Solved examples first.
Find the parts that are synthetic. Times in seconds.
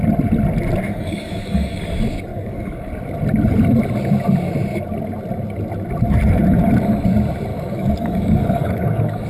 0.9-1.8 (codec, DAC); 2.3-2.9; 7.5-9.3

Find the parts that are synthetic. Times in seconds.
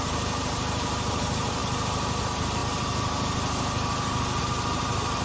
0.0-2.6 (vocoder, BigVGAN v2); 4.4-5.2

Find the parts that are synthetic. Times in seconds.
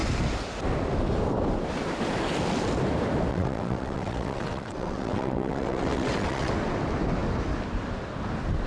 3.3-6.5 (vocoder, WaveNeXt)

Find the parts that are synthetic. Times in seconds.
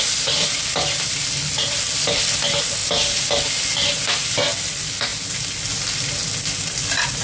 none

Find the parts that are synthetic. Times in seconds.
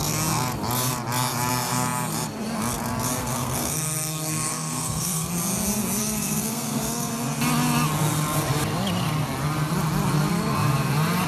3.2-5.3 (codec, SNAC); 6.0-7.1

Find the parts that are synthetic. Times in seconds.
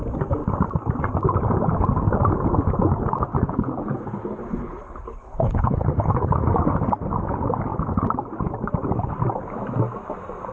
3.3-6.4 (codec, HILCodec)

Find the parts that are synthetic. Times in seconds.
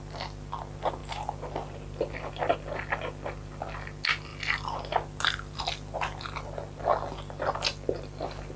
none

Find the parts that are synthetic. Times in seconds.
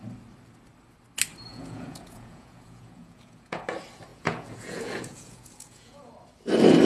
1.5-3.6 (vocoder, Vocos); 4.1-6.1